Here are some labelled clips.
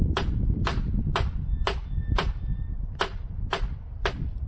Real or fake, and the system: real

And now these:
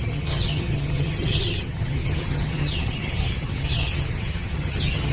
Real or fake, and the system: fake, vocoder, HiFi-GAN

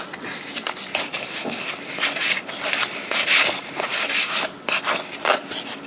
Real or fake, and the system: real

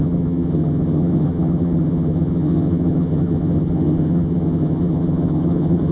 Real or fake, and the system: fake, vocoder, HiFi-GAN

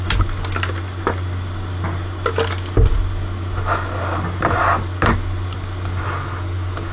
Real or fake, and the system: real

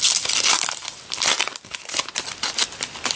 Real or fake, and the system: real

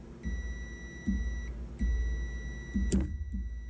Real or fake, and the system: real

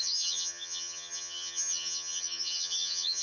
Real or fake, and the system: fake, vocoder, HiFi-GAN